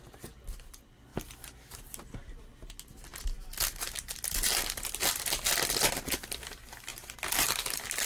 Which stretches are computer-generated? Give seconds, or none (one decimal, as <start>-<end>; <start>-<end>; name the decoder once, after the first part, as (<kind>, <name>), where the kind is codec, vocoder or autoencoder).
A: none